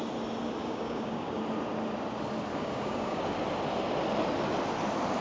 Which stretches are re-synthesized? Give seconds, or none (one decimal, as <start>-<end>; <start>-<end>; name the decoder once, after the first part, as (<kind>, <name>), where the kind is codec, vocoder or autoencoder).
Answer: 0.6-1.4 (codec, DAC); 2.5-3.2